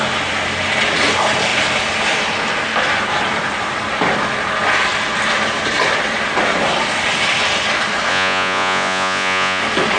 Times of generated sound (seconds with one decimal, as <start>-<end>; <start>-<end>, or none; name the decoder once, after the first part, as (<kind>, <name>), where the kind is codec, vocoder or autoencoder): 8.1-9.6 (vocoder, Vocos)